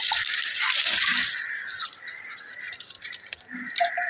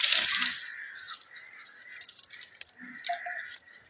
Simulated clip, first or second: first